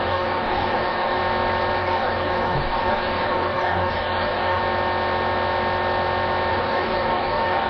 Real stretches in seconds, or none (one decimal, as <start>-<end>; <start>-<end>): 1.2-1.8; 4.6-6.5